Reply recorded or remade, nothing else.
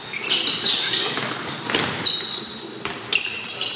recorded